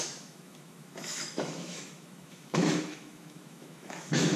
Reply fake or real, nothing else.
fake